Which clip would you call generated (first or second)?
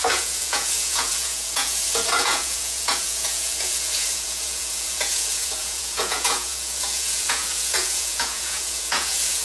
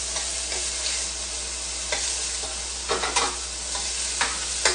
first